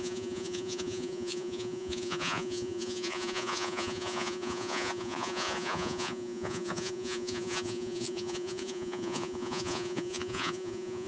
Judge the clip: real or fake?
fake